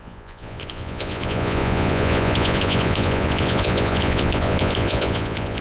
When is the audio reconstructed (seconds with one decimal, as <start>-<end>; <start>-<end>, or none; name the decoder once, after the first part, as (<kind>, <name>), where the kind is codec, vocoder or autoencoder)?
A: 0.0-5.6 (vocoder, Vocos)